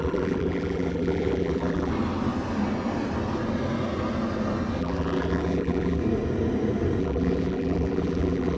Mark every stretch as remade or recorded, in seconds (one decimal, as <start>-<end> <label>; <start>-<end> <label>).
0.0-1.9 remade; 1.9-4.8 recorded; 4.8-6.0 remade; 6.0-7.0 recorded; 7.0-8.6 remade